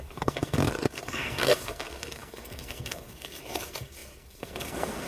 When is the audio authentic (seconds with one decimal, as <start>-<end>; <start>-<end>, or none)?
none